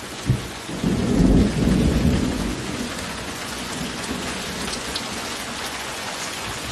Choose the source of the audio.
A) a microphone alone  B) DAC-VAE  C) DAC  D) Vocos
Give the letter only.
D